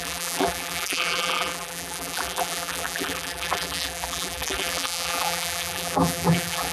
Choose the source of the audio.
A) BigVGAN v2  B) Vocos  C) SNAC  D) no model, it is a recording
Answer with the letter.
A